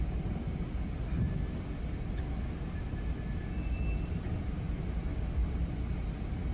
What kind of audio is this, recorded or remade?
recorded